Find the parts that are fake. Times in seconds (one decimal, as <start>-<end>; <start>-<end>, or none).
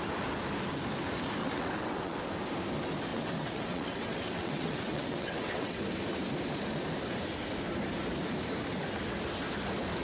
1.4-2.2; 3.1-5.8